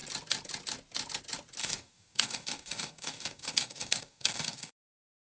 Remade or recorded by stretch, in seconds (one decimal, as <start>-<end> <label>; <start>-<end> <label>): 0.0-1.6 recorded; 1.6-4.8 remade; 4.8-5.3 recorded